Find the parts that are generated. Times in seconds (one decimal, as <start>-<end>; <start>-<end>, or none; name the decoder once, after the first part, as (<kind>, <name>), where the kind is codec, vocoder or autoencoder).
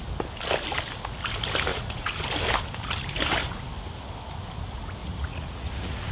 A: 1.7-2.2 (vocoder, Vocos); 5.0-6.1